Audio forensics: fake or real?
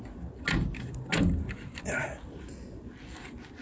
real